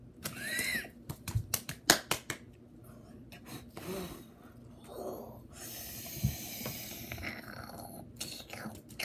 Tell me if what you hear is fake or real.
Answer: real